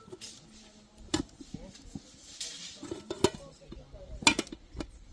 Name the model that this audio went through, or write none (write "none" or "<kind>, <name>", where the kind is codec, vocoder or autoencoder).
none